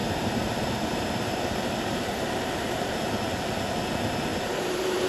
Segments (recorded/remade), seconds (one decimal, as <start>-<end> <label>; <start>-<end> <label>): 0.0-3.1 remade; 3.1-4.3 recorded; 4.3-5.1 remade